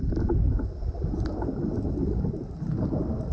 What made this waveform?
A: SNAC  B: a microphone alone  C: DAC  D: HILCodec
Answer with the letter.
B